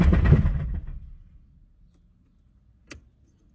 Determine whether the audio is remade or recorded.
recorded